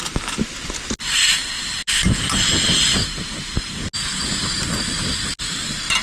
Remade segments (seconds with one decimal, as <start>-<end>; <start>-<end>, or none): none